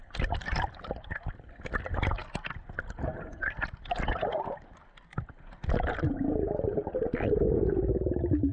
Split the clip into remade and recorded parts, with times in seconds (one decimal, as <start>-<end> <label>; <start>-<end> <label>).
0.0-8.5 recorded